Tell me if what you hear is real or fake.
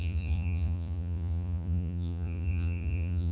fake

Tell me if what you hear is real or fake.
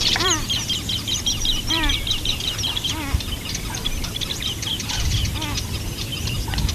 fake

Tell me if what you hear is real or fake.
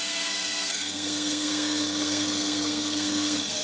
fake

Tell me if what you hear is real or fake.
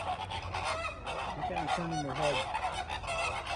real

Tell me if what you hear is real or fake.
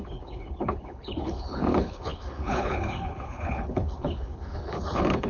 fake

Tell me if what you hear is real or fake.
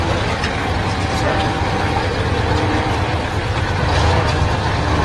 real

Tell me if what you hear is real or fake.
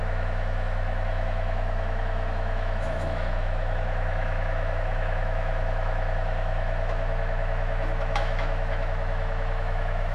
fake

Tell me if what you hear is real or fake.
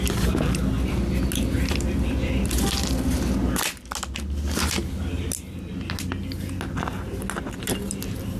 real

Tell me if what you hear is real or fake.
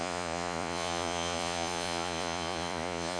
fake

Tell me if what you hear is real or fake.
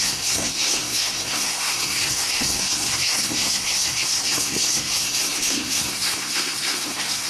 fake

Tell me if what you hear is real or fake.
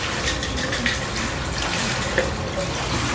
fake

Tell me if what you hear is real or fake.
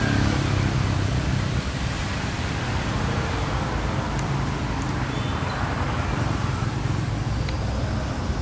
real